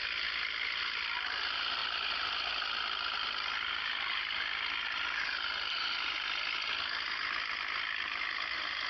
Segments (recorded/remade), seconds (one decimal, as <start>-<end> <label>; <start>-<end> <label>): 0.0-8.9 recorded